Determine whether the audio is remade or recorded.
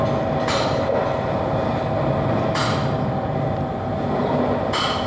recorded